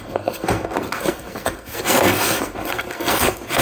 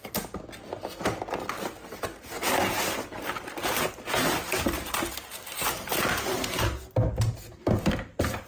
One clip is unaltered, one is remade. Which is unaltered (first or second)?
second